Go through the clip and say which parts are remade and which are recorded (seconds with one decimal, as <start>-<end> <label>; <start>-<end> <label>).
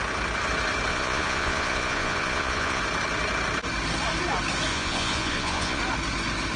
0.0-0.9 recorded; 0.9-2.8 remade; 2.8-4.7 recorded; 4.7-5.8 remade; 5.8-6.6 recorded